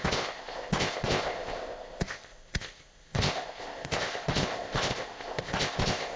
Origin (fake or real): fake